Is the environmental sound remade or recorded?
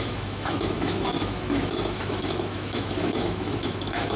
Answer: remade